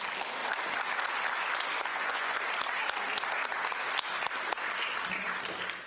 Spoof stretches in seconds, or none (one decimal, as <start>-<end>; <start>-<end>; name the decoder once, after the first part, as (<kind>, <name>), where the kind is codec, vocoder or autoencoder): 1.9-2.4 (vocoder, Vocos)